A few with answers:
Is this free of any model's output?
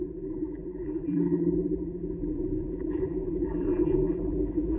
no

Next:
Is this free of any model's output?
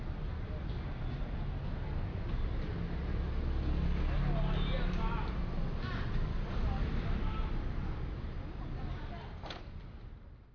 yes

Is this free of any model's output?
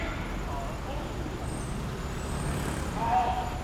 yes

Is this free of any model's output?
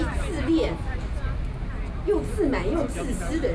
yes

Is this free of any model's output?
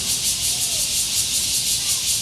yes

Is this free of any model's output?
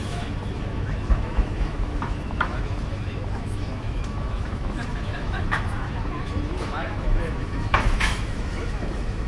no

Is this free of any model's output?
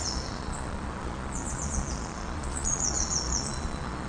no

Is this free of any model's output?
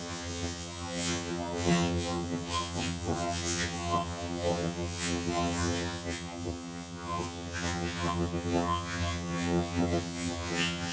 no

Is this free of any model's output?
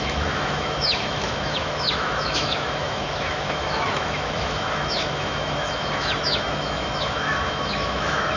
no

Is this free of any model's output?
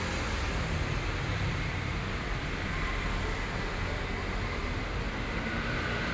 yes